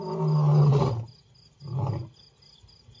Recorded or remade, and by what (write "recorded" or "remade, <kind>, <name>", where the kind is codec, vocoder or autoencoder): recorded